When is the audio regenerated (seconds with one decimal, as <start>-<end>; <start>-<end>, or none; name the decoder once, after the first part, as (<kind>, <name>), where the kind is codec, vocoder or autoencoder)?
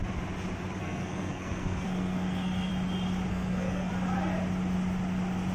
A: 0.8-2.7 (codec, SNAC); 3.3-3.9